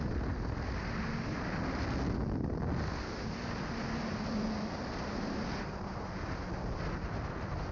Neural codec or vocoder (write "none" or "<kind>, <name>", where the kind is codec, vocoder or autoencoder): none